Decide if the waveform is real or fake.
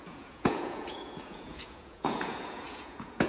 fake